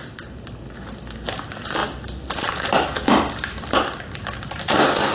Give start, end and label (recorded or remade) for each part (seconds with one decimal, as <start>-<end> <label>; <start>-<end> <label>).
0.0-0.5 remade; 0.5-5.1 recorded